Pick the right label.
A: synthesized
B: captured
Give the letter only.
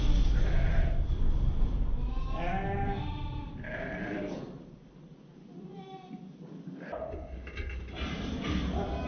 B